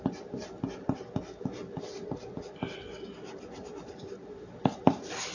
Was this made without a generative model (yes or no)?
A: yes